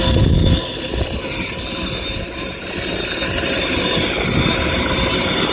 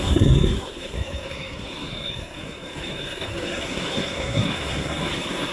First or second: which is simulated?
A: second